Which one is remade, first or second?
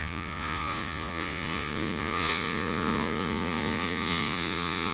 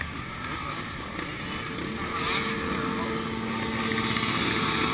first